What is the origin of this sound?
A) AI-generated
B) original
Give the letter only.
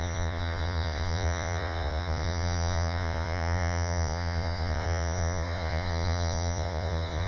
A